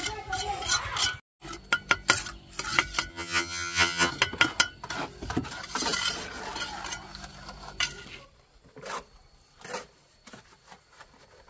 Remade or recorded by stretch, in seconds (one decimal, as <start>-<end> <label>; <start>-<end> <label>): 0.0-3.1 recorded; 3.1-4.1 remade; 4.1-11.5 recorded